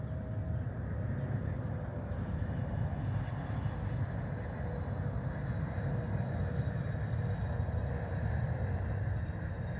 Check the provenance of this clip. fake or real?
real